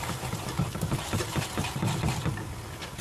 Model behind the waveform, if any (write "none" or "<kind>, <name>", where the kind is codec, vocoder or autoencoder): none